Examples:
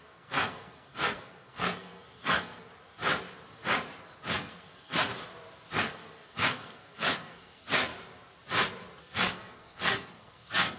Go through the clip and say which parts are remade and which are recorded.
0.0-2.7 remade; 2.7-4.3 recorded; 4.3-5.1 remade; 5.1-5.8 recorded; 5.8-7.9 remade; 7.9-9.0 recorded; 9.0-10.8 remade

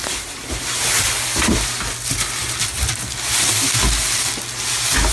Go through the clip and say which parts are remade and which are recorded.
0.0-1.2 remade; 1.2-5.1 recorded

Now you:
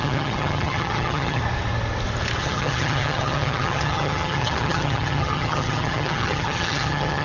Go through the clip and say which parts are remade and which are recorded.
0.0-1.4 remade; 1.4-2.4 recorded; 2.4-7.2 remade

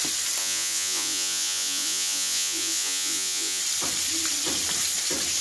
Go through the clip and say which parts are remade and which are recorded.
0.0-0.4 recorded; 0.4-3.6 remade; 3.6-5.4 recorded

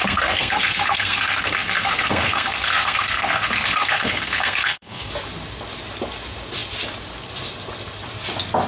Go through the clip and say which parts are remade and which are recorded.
0.0-5.1 remade; 5.1-8.7 recorded

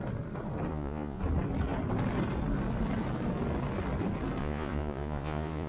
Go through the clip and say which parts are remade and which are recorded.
0.0-0.7 recorded; 0.7-1.2 remade; 1.2-4.4 recorded; 4.4-5.7 remade

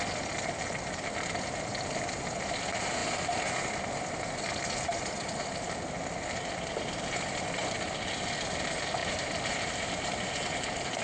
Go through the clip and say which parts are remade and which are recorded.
0.0-9.0 recorded; 9.0-11.0 remade

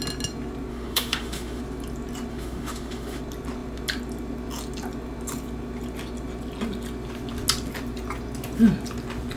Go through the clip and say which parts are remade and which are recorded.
0.0-0.7 recorded; 0.7-1.6 remade; 1.6-2.3 recorded; 2.3-3.2 remade; 3.2-9.4 recorded